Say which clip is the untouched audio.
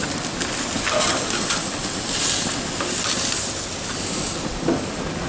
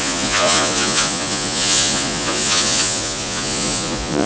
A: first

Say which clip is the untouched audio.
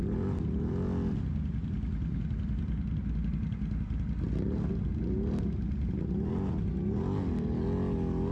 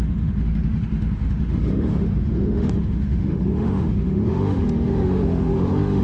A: first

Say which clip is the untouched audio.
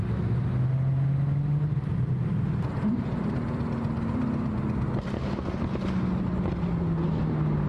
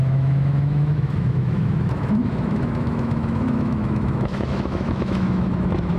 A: first